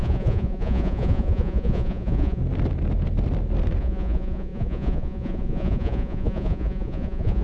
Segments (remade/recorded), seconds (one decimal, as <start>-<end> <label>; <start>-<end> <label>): 0.0-2.4 remade; 2.4-3.8 recorded; 3.8-7.4 remade